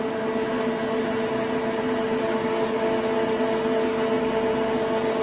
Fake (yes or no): no